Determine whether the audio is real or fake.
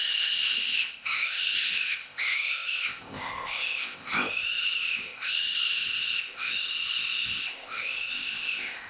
fake